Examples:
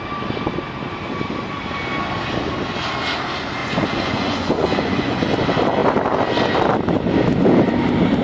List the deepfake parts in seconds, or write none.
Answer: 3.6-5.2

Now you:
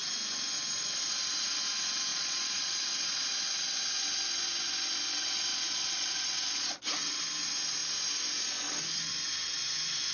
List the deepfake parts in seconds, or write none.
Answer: 2.1-2.8; 5.5-6.8

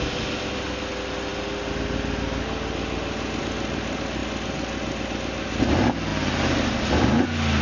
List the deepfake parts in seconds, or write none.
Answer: none

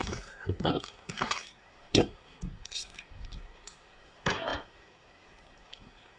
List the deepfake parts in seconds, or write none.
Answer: 0.0-6.2